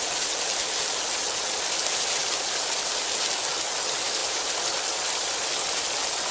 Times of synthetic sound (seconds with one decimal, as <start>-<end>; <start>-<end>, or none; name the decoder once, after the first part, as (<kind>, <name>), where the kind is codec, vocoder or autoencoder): 2.2-3.5 (vocoder, BigVGAN v2); 4.2-5.3